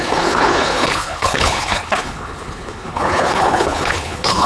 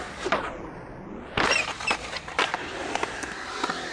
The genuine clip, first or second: second